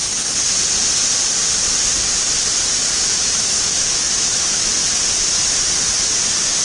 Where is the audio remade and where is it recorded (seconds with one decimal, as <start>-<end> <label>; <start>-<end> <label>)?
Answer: 0.0-3.1 recorded; 3.1-4.7 remade; 4.7-6.6 recorded